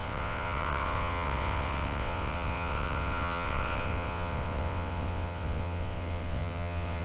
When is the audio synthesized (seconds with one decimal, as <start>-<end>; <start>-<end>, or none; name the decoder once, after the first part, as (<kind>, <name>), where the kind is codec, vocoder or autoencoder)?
0.0-7.0 (vocoder, WaveNeXt)